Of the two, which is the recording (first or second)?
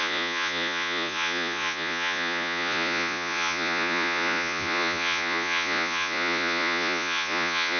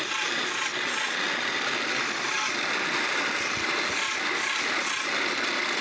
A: second